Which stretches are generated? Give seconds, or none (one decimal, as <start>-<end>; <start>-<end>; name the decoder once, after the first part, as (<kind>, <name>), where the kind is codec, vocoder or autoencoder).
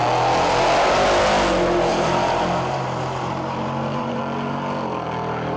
1.9-4.2 (vocoder, BigVGAN v2)